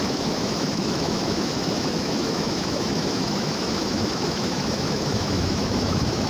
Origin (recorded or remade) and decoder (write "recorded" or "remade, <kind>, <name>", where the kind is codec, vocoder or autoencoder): remade, autoencoder, DAC-VAE